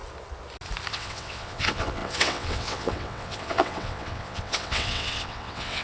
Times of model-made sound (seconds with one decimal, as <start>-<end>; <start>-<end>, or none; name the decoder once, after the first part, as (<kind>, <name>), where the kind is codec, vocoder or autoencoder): 0.9-5.8 (vocoder, WaveNeXt)